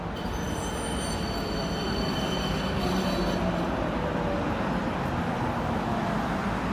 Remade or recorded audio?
recorded